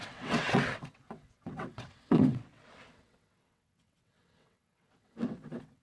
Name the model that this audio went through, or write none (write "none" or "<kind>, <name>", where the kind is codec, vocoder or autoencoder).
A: vocoder, WaveNeXt